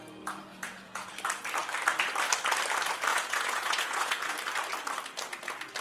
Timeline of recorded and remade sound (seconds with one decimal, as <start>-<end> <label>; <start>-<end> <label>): 0.0-0.5 recorded; 0.5-1.1 remade; 1.1-3.1 recorded; 3.1-4.3 remade; 4.3-5.8 recorded